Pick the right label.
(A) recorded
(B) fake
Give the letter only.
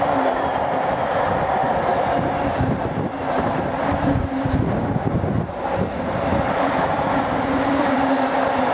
B